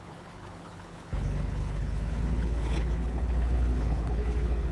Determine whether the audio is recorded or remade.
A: remade